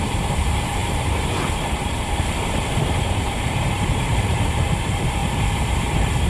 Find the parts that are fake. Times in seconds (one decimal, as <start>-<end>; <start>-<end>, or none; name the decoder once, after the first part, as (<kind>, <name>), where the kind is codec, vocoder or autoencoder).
0.0-6.3 (vocoder, BigVGAN v2)

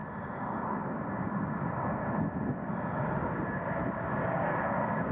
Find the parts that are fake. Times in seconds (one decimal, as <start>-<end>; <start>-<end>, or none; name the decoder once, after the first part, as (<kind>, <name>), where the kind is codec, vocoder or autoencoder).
4.2-5.1 (codec, DAC)

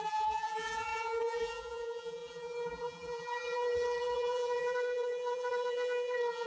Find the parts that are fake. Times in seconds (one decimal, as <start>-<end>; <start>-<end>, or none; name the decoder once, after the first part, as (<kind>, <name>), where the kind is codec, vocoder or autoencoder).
0.0-6.5 (vocoder, BigVGAN v2)

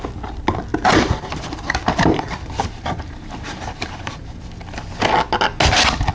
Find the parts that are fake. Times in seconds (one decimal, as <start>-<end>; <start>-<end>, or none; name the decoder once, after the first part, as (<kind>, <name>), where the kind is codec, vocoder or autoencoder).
0.7-4.4 (vocoder, BigVGAN v2)